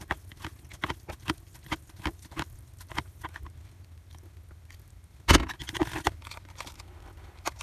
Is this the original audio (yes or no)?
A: yes